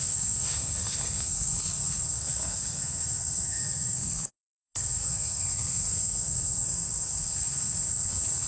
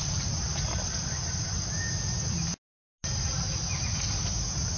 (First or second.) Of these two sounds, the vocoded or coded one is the first